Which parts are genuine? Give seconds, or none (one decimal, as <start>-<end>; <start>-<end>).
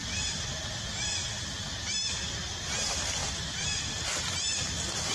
0.0-5.1